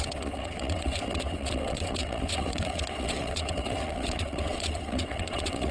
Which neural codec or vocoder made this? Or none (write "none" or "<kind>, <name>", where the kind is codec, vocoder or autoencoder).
vocoder, WaveNeXt